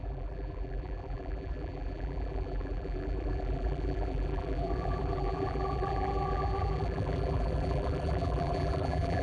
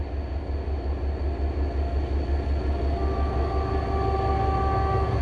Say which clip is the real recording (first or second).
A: second